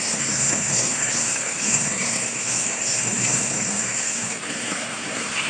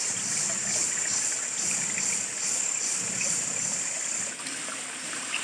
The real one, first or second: second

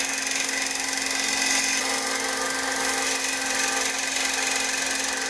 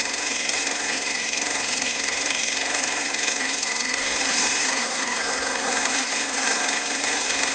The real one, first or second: first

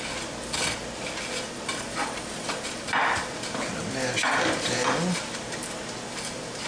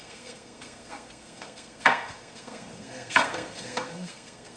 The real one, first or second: first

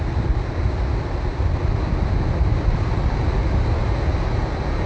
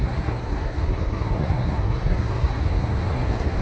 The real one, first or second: first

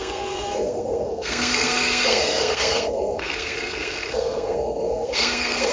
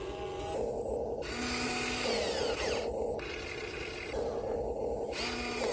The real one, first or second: second